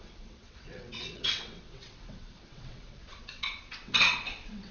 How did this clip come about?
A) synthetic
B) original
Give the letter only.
A